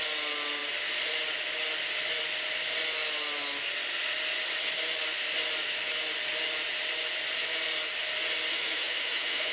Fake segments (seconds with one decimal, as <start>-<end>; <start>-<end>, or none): 8.5-9.5